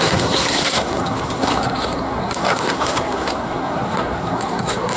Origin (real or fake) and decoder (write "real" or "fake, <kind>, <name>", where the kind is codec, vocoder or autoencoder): fake, codec, SNAC